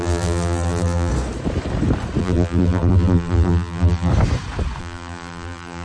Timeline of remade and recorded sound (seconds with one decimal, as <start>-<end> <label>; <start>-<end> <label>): 0.0-1.1 remade; 1.1-2.2 recorded; 2.2-4.1 remade; 4.1-4.8 recorded; 4.8-5.8 remade